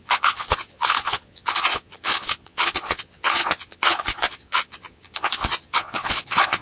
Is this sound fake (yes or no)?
yes